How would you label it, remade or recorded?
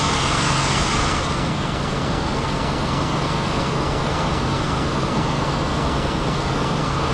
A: remade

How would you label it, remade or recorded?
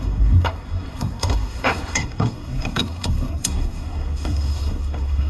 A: remade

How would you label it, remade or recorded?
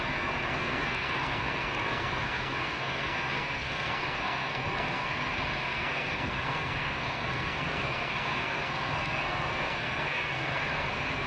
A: remade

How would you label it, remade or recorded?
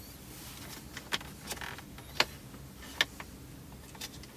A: recorded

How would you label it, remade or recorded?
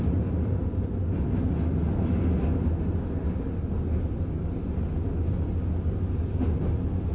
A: recorded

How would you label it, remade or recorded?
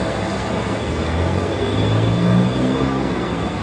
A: remade